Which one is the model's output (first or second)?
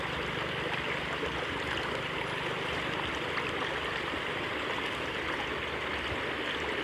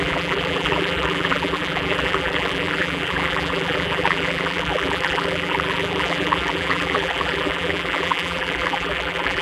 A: second